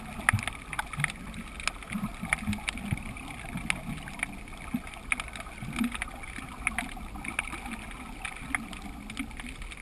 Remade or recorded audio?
recorded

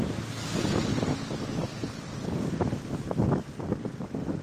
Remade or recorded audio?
recorded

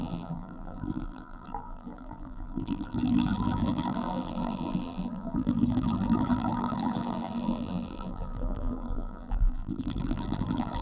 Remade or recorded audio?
remade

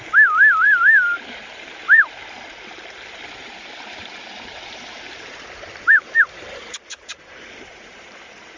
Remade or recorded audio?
remade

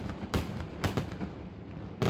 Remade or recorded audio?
remade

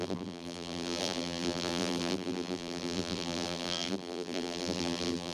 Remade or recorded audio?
remade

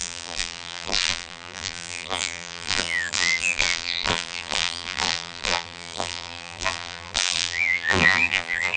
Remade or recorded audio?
remade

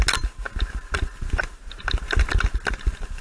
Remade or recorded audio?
recorded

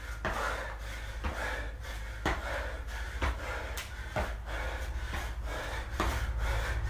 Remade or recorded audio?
recorded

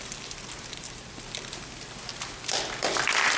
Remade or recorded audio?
remade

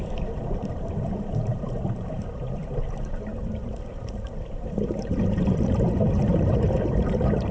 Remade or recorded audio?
remade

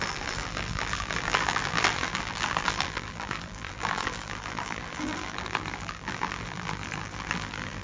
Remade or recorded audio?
remade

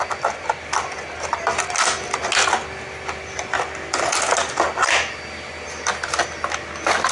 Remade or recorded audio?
recorded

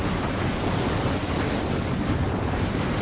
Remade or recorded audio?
remade